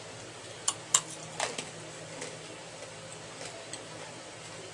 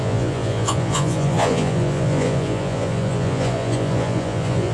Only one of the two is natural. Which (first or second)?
first